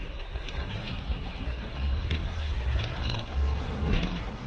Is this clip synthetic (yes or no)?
yes